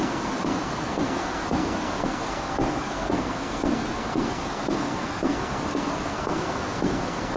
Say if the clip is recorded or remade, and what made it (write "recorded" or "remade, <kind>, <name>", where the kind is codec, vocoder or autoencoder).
remade, codec, SNAC